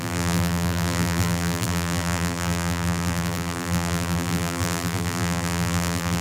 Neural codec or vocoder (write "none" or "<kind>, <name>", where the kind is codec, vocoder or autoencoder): vocoder, BigVGAN v2